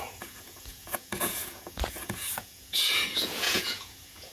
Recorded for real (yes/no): no